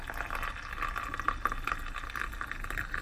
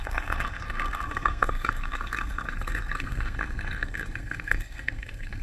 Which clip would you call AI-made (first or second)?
second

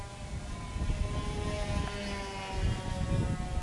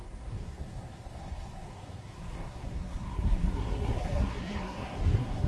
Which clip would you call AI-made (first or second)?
second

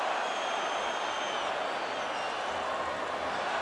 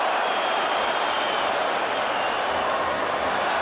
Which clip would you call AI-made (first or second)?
second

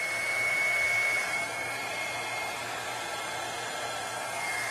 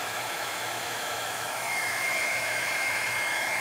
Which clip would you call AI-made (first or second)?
second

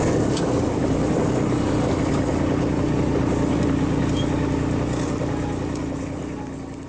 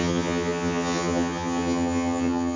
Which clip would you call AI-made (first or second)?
second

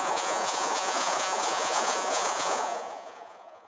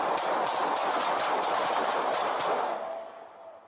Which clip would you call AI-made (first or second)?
first